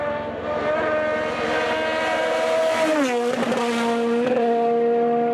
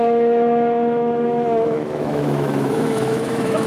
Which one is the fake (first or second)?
second